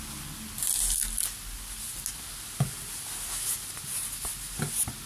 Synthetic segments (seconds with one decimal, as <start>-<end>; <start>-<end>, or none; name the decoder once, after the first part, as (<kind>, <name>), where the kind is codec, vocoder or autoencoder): none